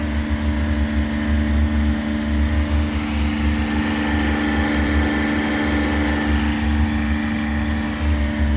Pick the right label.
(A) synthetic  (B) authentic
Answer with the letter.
B